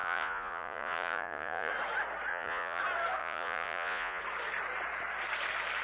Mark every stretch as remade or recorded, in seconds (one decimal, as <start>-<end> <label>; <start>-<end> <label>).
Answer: 0.0-1.7 remade; 1.7-2.3 recorded; 2.3-2.8 remade; 2.8-3.2 recorded; 3.2-4.2 remade; 4.2-5.8 recorded